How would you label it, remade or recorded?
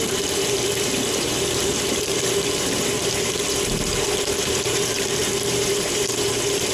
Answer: remade